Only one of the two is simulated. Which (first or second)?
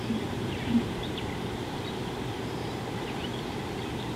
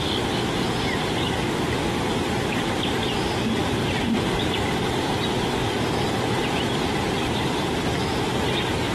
second